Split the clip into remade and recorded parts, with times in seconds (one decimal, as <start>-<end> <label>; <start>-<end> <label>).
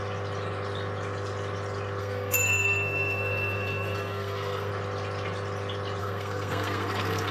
0.0-2.0 recorded; 2.0-4.7 remade; 4.7-6.0 recorded; 6.0-7.3 remade